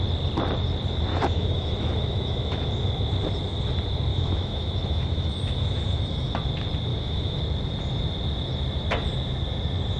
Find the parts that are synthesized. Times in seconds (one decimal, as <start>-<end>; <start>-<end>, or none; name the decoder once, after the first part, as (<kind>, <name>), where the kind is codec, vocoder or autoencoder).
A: 1.1-2.7 (autoencoder, DAC-VAE); 4.1-6.3; 6.9-7.4